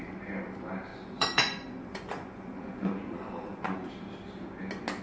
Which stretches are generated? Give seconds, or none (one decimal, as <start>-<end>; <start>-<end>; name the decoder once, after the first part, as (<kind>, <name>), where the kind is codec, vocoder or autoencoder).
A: 0.9-3.9 (vocoder, Vocos)